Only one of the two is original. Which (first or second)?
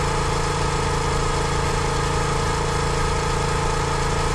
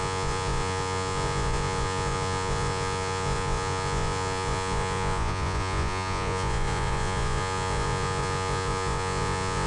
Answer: first